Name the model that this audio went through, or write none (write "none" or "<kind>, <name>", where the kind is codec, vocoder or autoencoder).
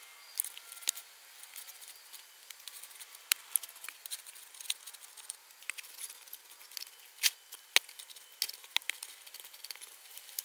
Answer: none